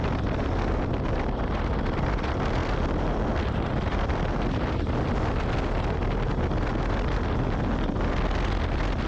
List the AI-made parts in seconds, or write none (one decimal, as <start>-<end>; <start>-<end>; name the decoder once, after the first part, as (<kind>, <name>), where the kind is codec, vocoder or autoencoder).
none